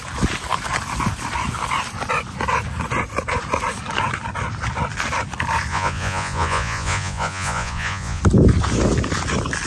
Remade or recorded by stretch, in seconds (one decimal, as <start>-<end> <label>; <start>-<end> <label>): 0.0-5.7 recorded; 5.7-8.2 remade; 8.2-9.7 recorded